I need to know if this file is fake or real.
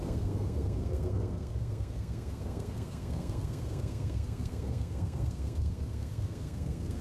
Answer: fake